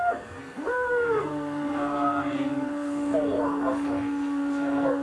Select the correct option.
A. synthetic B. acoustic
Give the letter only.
A